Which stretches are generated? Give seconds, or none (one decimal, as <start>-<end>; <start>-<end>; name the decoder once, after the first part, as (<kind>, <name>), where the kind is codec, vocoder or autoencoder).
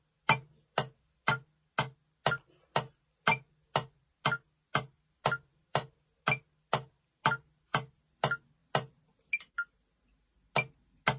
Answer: none